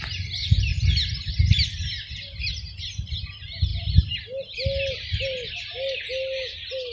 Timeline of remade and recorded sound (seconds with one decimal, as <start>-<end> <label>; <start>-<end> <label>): 0.0-6.9 recorded